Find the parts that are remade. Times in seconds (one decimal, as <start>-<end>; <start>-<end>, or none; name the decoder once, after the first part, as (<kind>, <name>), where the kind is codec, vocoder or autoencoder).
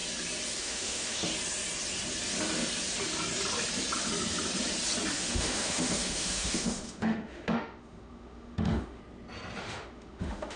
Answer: 0.6-1.2 (autoencoder, DAC-VAE); 5.1-9.0; 9.6-10.6